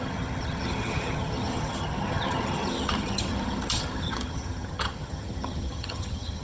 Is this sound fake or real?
fake